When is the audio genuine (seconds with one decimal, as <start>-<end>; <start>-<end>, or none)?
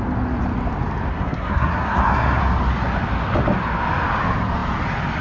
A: 0.0-1.1; 2.4-5.2